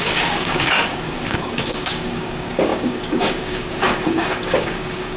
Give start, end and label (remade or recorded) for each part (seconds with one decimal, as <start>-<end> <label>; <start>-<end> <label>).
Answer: 0.0-5.2 remade